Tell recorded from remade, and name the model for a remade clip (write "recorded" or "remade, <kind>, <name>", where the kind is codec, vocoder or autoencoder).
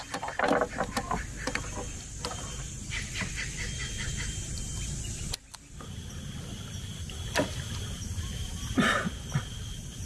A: recorded